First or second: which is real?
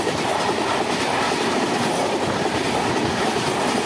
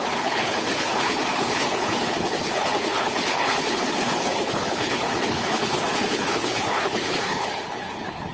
first